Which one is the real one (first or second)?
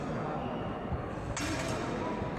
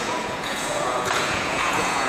first